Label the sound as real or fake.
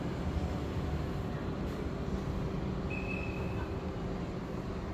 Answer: real